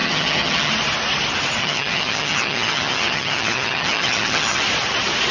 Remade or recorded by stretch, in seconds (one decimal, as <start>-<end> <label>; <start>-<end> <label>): 0.0-0.7 remade; 0.7-1.6 recorded; 1.6-4.6 remade; 4.6-5.3 recorded